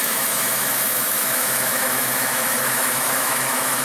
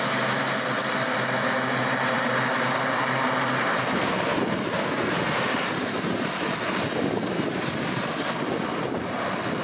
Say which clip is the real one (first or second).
second